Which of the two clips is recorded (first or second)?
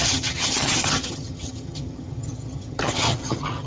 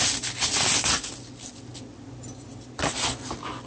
second